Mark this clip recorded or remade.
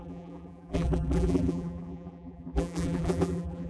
remade